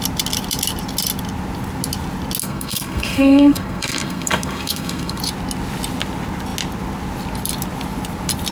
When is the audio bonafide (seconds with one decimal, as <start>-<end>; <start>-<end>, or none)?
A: 0.0-2.4; 5.2-8.5